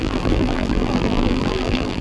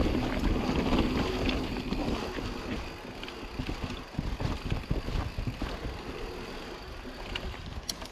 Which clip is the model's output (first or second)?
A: first